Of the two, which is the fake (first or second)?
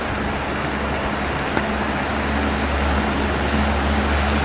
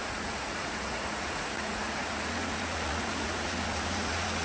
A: second